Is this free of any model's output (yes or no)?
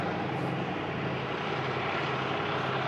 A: yes